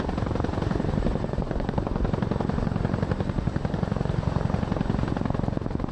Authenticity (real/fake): fake